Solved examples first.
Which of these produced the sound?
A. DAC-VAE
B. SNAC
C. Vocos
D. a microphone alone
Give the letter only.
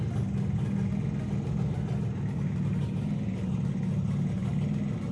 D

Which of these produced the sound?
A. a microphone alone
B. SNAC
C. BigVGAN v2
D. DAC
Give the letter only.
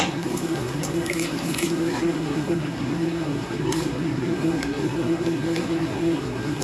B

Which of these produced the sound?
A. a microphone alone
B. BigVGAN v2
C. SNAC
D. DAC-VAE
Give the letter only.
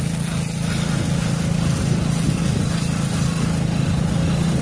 A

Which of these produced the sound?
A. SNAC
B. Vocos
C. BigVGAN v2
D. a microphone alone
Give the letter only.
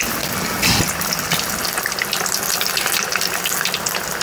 D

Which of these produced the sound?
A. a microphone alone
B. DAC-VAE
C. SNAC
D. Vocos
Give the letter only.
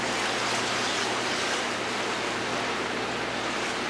A